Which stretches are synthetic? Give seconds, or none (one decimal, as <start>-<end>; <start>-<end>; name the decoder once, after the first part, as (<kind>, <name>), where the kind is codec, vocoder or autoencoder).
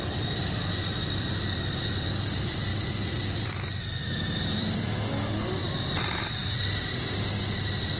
0.0-6.4 (vocoder, BigVGAN v2)